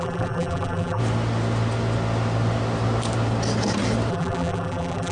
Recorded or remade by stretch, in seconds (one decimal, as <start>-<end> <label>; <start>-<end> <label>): 0.0-1.0 remade; 1.0-4.1 recorded; 4.1-5.1 remade